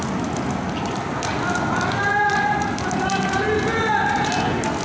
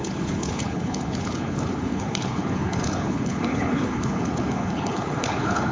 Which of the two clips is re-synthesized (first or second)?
second